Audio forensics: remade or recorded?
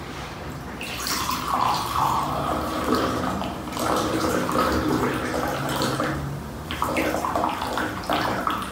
remade